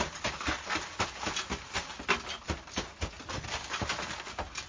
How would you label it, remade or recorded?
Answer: recorded